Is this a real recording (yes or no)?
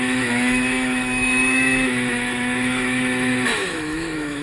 no